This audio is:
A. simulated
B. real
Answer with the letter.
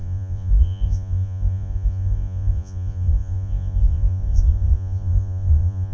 A